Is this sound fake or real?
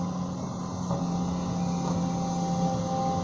real